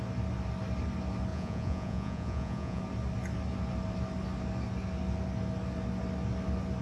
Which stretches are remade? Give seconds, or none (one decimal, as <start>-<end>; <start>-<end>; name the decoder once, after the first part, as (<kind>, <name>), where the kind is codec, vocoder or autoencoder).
1.3-2.8 (vocoder, Vocos)